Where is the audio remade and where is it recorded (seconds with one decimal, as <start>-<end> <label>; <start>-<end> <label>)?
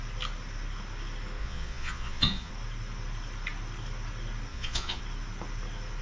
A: 0.0-1.4 recorded; 1.4-2.5 remade; 2.5-4.5 recorded; 4.5-5.0 remade; 5.0-6.0 recorded